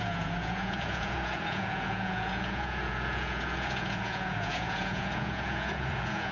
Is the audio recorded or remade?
remade